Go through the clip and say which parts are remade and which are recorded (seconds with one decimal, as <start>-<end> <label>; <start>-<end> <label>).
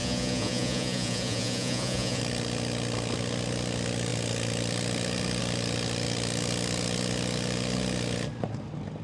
0.0-2.2 remade; 2.2-9.0 recorded